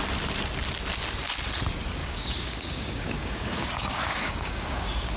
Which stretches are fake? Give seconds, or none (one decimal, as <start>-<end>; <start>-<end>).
2.0-5.2